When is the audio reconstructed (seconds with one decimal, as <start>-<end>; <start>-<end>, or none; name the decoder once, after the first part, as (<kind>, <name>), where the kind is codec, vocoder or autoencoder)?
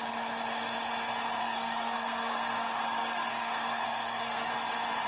1.4-4.5 (codec, SNAC)